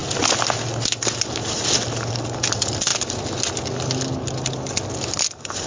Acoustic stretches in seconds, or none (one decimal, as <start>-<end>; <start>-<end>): 0.0-5.7